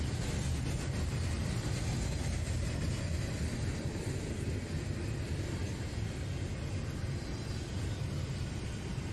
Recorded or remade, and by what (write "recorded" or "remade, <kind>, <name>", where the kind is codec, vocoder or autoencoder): recorded